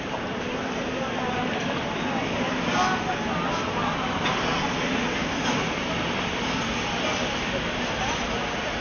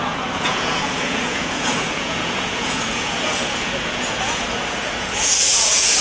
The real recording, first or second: first